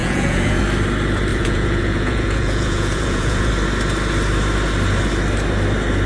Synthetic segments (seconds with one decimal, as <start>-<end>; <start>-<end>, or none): 0.0-0.6; 1.3-3.5